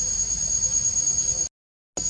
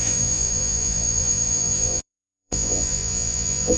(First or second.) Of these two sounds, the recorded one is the first